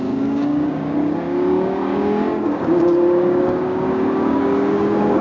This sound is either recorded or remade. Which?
remade